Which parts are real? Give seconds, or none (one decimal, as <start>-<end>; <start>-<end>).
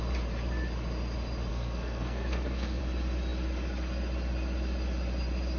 0.0-1.5; 2.8-5.6